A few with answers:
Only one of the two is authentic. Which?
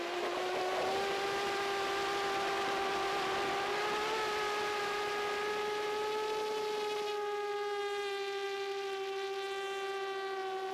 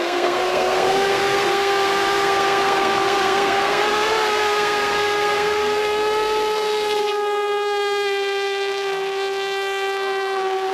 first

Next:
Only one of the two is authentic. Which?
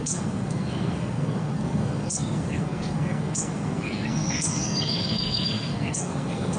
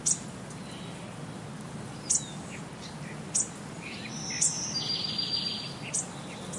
second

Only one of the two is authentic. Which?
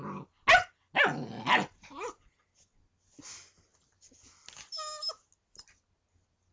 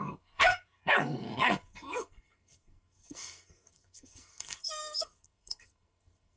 first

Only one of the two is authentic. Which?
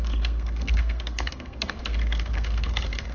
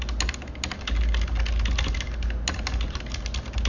second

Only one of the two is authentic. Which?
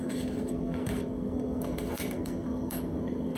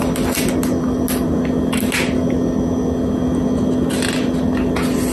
second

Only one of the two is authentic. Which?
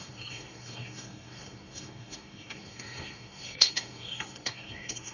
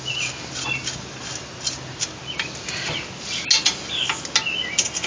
second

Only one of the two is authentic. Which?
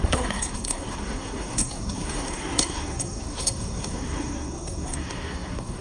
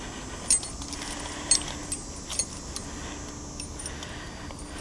second